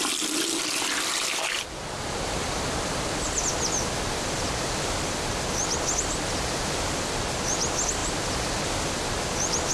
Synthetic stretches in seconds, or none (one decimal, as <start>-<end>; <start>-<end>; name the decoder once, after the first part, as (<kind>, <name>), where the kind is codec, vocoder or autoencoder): none